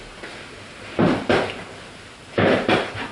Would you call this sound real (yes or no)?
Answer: yes